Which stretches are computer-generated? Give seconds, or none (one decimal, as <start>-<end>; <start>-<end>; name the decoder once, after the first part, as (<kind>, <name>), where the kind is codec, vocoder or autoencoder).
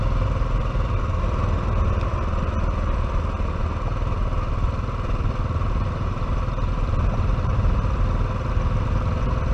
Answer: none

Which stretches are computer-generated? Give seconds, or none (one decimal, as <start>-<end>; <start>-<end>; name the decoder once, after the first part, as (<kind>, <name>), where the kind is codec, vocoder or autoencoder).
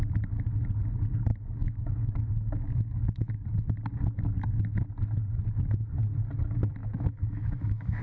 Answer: 1.3-3.3 (autoencoder, DAC-VAE); 6.8-8.0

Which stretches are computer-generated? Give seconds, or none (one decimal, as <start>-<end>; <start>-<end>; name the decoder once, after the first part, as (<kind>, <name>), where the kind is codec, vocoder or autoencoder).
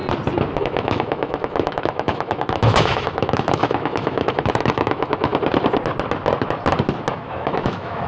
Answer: 0.6-5.3 (autoencoder, DAC-VAE); 7.1-8.1